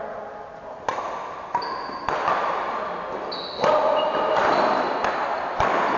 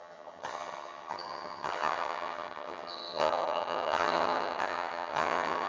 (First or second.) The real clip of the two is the first